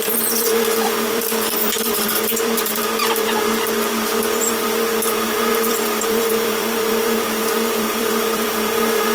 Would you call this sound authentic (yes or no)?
no